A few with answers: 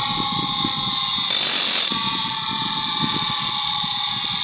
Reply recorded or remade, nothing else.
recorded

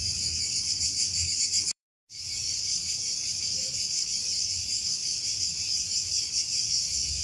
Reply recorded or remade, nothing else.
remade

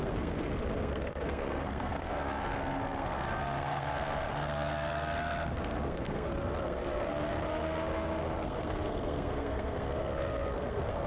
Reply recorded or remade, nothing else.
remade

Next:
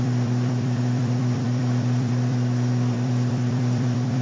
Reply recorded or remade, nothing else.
remade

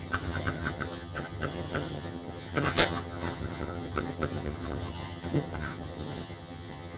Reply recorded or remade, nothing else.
remade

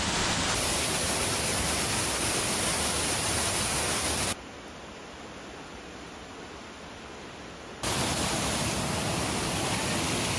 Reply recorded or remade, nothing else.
recorded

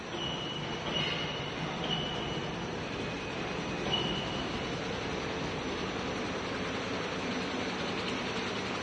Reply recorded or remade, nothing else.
recorded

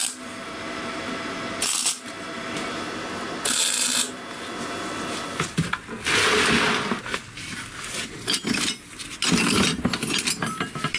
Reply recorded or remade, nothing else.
recorded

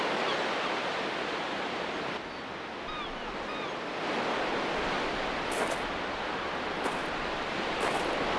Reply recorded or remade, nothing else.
recorded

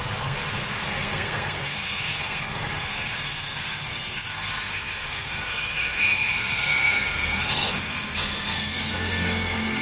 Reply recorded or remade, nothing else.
remade